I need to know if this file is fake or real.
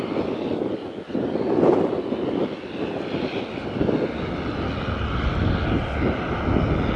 real